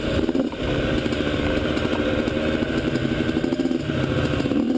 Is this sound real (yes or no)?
no